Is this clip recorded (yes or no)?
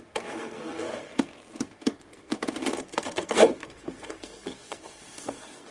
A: no